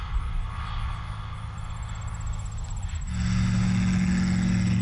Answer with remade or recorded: recorded